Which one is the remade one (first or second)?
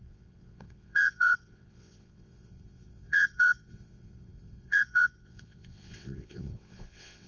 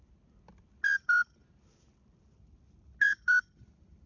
first